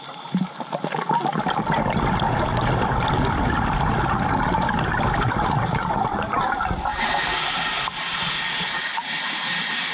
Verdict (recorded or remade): recorded